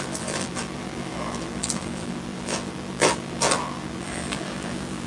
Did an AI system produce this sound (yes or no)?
yes